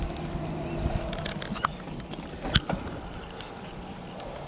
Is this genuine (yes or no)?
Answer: yes